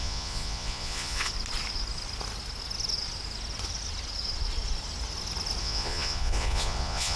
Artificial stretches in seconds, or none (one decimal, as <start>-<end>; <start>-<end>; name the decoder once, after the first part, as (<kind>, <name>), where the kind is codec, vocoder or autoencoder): 0.0-1.3 (vocoder, Vocos); 5.6-7.2